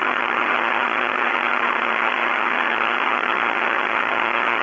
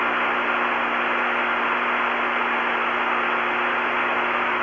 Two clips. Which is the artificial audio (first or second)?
first